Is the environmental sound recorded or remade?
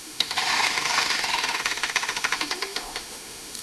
remade